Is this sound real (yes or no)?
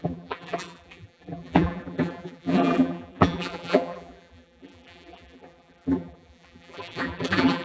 no